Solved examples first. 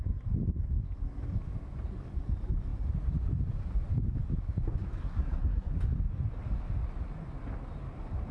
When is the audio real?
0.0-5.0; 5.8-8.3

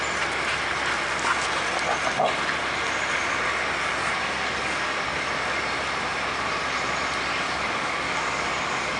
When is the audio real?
0.0-4.0; 5.2-7.3